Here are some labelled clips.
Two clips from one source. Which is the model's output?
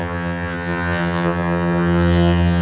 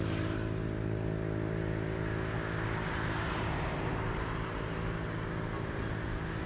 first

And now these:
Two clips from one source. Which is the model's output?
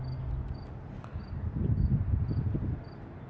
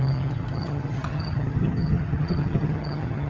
second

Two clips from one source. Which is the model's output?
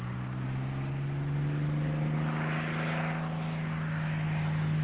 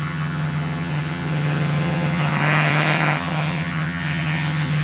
second